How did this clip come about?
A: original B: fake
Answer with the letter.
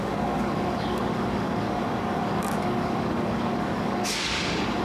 B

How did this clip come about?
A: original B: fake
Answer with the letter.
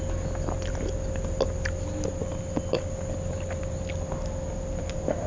A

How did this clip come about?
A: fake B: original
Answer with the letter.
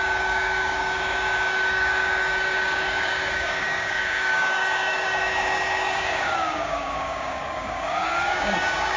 A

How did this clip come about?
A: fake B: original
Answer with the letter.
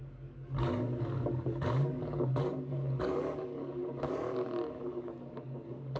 A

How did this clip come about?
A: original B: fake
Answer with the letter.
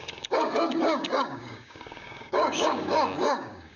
B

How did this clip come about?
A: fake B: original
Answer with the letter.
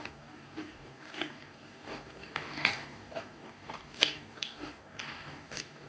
A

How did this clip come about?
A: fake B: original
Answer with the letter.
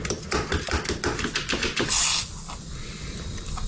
B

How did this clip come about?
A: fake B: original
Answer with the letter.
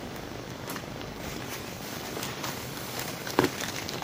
A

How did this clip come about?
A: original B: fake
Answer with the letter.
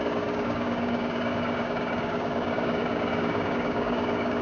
B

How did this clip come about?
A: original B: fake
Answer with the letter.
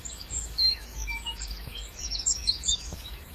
B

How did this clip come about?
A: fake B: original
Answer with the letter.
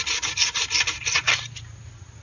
B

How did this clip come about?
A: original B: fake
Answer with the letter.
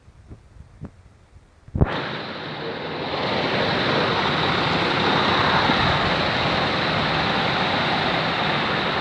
A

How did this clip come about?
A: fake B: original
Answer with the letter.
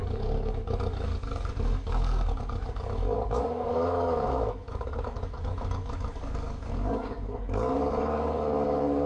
A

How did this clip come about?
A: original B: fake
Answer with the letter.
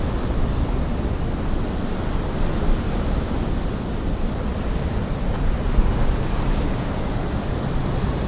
A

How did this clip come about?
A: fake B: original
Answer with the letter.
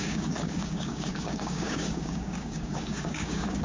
A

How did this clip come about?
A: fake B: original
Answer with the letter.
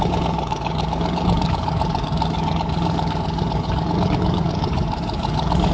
A